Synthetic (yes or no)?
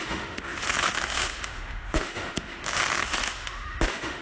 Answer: yes